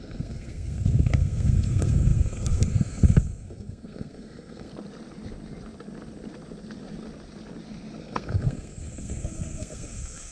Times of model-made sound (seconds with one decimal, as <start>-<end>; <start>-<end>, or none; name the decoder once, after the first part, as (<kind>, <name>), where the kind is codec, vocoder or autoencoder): 0.0-4.7 (codec, SNAC); 8.0-10.3